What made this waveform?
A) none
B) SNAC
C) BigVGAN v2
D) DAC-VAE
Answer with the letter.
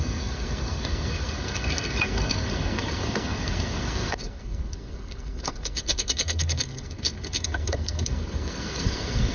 B